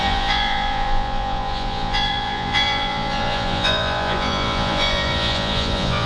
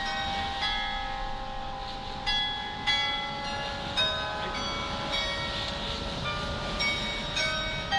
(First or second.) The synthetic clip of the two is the first